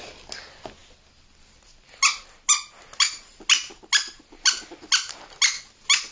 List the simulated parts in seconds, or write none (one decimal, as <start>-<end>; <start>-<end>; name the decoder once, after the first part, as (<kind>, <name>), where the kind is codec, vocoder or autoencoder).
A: none